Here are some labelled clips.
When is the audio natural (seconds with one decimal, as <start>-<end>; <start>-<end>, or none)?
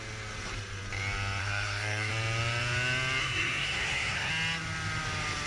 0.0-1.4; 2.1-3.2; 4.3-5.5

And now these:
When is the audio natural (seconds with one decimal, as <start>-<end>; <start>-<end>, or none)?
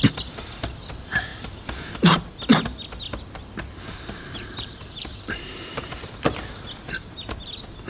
0.0-3.4; 5.9-7.9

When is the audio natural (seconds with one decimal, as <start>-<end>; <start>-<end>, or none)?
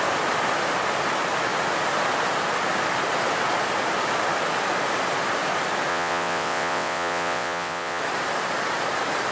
0.0-5.9; 8.0-9.3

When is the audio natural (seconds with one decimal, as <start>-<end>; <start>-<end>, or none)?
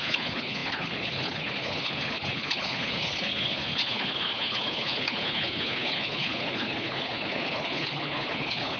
none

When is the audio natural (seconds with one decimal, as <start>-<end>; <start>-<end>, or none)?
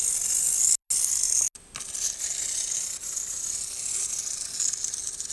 0.0-5.3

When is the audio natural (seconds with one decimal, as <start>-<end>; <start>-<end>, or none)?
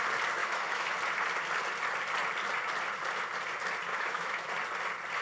0.0-0.4; 0.9-3.9; 4.5-5.2